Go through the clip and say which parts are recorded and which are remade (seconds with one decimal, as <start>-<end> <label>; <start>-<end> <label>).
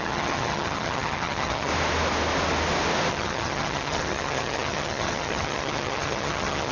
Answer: 0.0-1.7 remade; 1.7-3.1 recorded; 3.1-6.7 remade